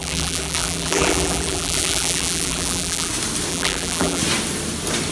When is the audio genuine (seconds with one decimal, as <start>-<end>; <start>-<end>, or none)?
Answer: 3.1-3.5; 4.2-5.1